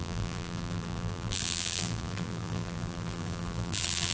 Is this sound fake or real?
fake